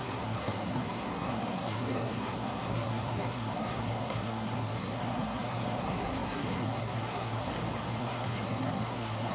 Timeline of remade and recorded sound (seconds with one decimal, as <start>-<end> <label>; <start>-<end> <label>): 0.0-7.5 remade; 7.5-8.0 recorded; 8.0-9.3 remade